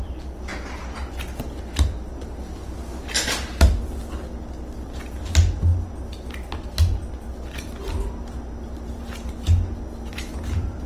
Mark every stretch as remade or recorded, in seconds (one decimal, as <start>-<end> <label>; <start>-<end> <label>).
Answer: 0.0-10.1 recorded; 10.1-10.9 remade